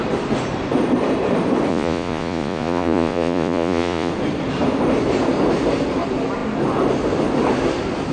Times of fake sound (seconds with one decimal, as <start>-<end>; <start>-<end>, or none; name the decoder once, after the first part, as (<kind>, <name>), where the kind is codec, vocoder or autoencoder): 1.7-4.1 (vocoder, Vocos)

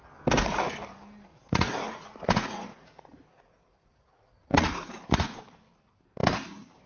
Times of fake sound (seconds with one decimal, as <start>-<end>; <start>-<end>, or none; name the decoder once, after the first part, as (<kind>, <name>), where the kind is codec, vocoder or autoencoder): 1.3-5.4 (vocoder, Vocos)

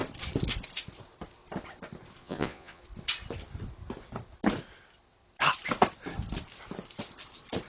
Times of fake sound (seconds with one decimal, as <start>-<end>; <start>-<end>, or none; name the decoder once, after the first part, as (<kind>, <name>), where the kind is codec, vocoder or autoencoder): 2.2-2.8 (vocoder, Vocos)

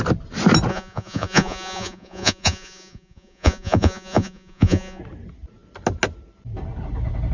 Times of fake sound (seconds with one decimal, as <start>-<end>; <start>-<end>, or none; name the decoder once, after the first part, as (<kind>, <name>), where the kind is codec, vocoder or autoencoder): 0.7-5.0 (vocoder, Vocos)

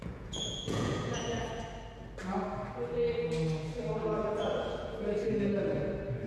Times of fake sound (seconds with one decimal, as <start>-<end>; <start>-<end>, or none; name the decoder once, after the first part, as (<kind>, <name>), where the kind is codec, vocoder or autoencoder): 0.0-1.6 (vocoder, Vocos); 4.2-4.9